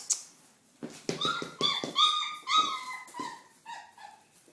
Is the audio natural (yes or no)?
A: yes